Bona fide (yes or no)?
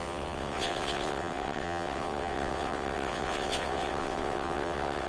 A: no